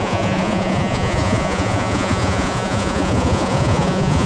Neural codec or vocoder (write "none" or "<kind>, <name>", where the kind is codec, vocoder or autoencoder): vocoder, Vocos